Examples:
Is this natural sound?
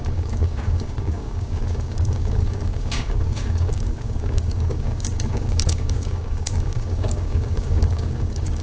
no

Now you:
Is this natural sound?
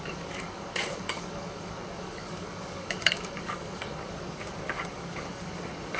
no